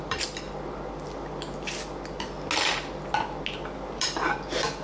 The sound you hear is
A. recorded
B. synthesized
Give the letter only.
A